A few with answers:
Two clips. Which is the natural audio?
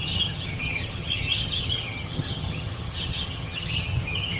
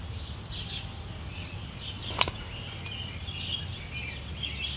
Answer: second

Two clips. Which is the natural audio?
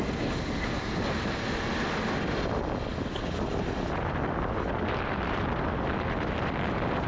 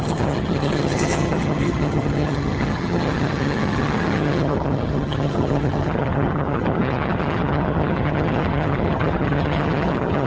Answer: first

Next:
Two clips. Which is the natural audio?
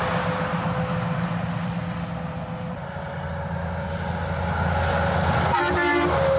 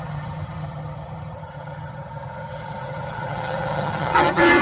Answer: first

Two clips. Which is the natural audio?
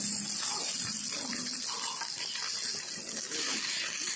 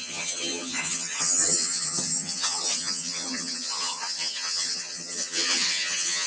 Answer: first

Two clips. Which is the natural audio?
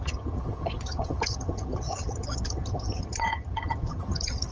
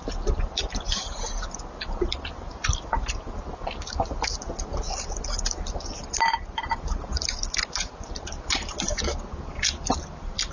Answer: second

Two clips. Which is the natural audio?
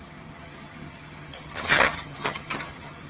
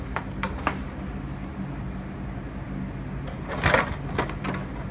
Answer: second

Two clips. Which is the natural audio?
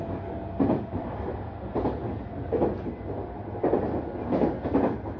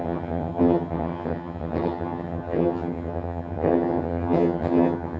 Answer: first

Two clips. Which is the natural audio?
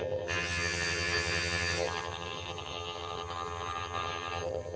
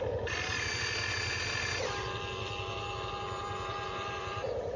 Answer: second